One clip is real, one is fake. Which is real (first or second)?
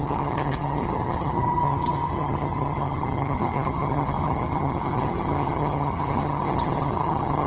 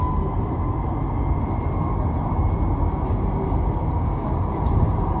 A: second